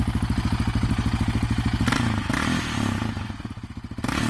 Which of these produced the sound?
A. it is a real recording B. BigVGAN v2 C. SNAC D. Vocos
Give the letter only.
A